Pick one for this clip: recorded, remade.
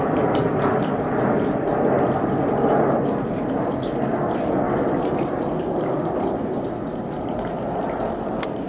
recorded